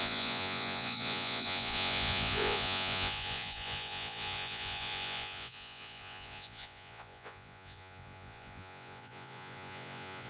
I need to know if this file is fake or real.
fake